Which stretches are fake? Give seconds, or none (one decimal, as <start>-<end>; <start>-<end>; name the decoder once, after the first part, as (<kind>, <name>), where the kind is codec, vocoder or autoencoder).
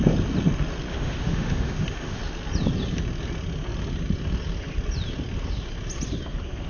0.9-2.2 (autoencoder, DAC-VAE)